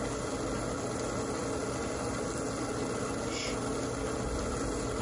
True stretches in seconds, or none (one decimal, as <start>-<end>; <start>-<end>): 0.0-5.0